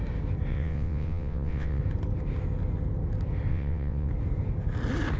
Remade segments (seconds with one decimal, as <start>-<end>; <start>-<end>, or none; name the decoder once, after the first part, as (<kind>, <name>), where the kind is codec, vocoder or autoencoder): 0.5-1.8 (vocoder, WaveNeXt); 3.5-4.1